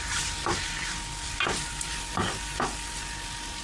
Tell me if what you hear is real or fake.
real